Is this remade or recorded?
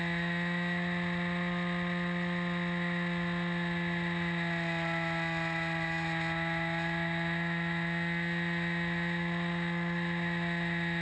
recorded